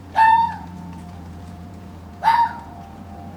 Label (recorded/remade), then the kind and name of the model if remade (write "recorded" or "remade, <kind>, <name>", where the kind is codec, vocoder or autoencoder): remade, vocoder, Vocos